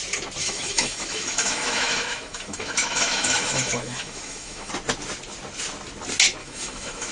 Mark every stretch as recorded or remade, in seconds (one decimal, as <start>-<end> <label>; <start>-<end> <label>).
0.0-0.4 recorded; 0.4-4.7 remade; 4.7-6.4 recorded; 6.4-7.1 remade